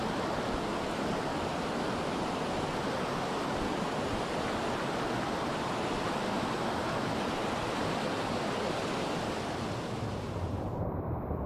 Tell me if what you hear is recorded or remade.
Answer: recorded